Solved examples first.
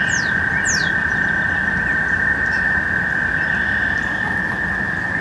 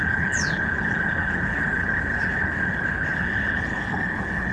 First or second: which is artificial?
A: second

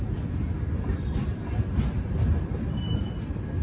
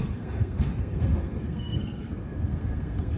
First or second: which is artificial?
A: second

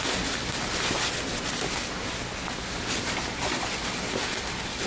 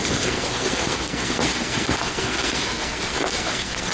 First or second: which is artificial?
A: second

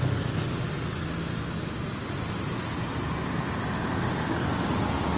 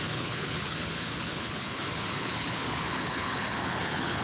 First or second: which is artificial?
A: second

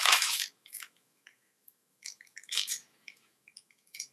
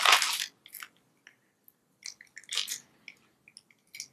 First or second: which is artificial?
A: first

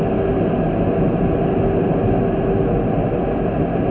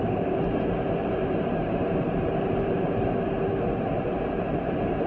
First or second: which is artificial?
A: second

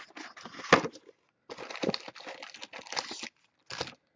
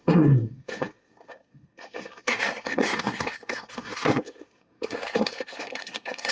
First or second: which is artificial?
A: second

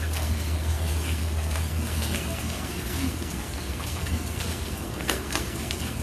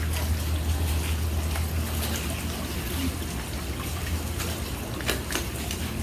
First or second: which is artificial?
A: first